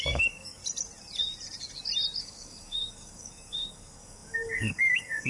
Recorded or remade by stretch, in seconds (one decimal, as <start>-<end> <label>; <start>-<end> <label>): 0.0-0.6 remade; 0.6-2.2 recorded; 2.2-5.3 remade